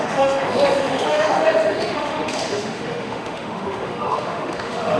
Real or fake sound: fake